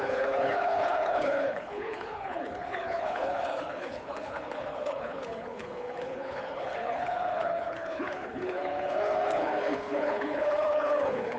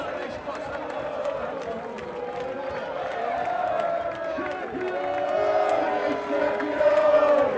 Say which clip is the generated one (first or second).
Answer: first